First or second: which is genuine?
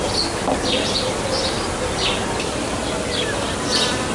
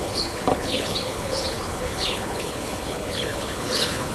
first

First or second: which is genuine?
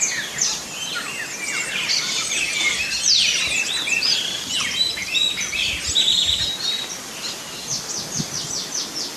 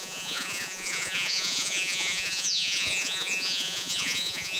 first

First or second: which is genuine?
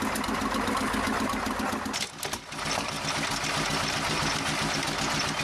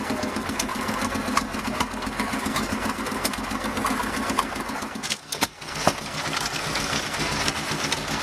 first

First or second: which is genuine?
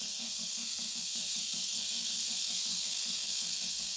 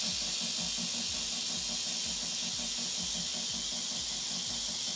second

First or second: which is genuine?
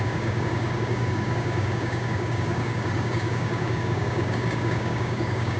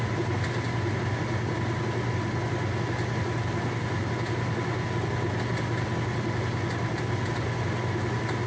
second